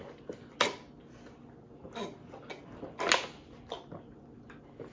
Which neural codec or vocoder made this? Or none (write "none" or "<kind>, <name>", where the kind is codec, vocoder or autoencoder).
none